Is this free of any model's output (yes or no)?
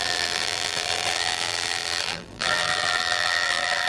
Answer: no